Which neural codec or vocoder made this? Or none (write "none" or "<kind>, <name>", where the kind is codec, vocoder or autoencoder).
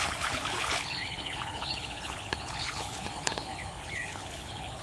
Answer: codec, HILCodec